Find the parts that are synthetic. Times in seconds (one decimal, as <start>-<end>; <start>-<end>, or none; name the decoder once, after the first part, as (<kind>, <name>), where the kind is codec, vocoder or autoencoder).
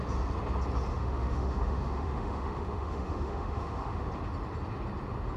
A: 0.9-4.1 (autoencoder, DAC-VAE)